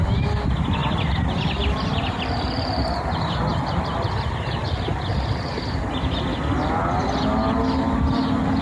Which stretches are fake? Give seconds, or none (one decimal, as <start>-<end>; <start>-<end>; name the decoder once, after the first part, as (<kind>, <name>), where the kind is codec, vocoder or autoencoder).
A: 0.0-4.6 (vocoder, BigVGAN v2)